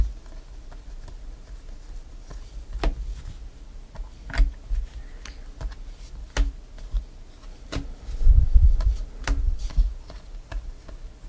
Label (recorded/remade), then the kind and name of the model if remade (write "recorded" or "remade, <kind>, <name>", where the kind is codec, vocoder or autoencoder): recorded